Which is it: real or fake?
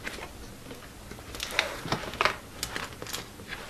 real